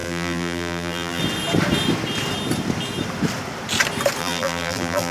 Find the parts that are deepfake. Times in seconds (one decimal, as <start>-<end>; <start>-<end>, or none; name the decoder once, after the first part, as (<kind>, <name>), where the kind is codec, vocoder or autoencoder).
0.0-1.2 (vocoder, BigVGAN v2); 4.2-5.1